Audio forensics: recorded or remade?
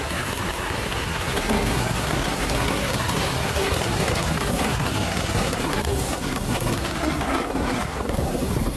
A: remade